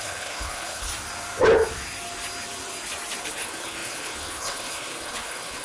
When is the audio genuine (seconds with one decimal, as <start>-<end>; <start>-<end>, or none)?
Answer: 0.9-3.2